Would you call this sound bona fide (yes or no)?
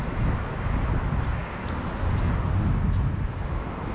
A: yes